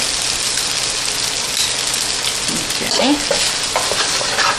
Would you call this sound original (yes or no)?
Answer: yes